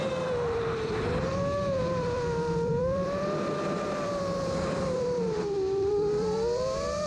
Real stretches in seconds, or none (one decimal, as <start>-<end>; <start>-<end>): 1.3-1.8